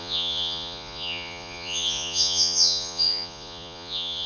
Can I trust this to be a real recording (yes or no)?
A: no